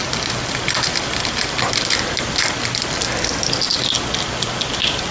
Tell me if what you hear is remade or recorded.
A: recorded